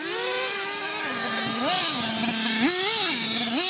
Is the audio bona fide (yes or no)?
yes